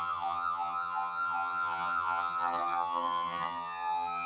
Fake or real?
fake